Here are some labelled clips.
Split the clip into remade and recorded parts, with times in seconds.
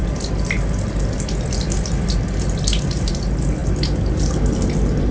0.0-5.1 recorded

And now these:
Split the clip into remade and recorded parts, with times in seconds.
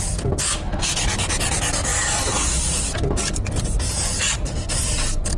0.0-5.4 recorded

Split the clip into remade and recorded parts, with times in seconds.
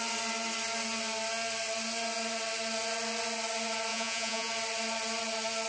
0.0-3.9 recorded; 3.9-4.5 remade; 4.5-5.7 recorded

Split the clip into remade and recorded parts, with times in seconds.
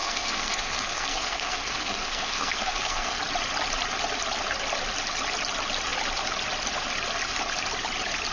0.0-3.2 remade; 3.2-8.3 recorded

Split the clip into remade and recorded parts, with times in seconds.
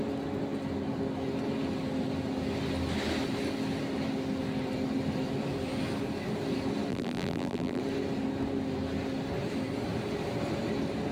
0.0-6.9 recorded; 6.9-7.8 remade; 7.8-11.1 recorded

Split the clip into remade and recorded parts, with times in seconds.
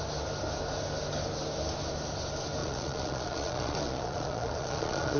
0.0-2.6 recorded; 2.6-5.2 remade